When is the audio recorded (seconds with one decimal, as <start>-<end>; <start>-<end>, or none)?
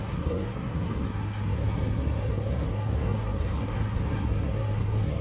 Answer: none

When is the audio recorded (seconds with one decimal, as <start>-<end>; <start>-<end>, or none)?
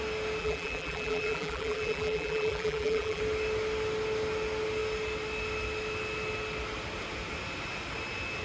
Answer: 0.0-0.4; 3.2-8.4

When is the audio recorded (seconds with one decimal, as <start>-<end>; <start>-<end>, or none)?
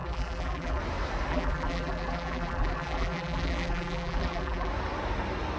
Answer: 0.8-1.3; 4.7-5.6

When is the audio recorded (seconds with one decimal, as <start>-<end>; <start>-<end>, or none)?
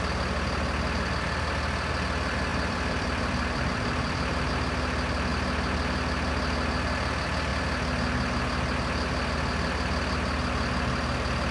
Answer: 0.0-2.5; 4.5-11.5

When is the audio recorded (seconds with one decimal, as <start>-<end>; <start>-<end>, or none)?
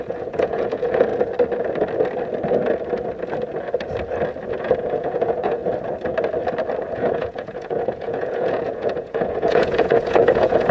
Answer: 1.1-4.6; 5.6-6.9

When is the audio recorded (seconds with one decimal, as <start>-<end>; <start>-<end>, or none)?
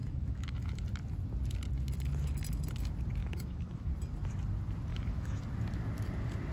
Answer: 0.8-3.2; 3.9-4.9; 5.4-6.5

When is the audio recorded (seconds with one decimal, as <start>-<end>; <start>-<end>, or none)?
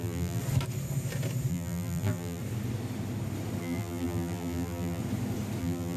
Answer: 0.4-1.5; 2.4-3.6; 5.0-5.6